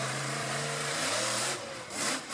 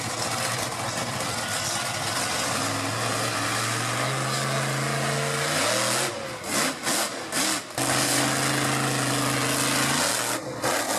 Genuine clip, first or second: second